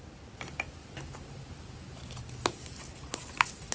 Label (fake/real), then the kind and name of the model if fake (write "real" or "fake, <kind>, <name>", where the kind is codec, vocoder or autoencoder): real